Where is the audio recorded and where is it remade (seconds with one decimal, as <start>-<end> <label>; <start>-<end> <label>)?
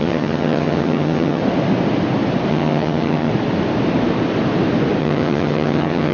0.0-1.4 remade; 1.4-2.5 recorded; 2.5-3.3 remade; 3.3-5.0 recorded; 5.0-6.1 remade